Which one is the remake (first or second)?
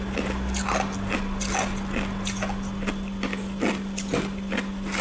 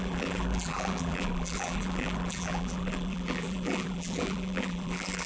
second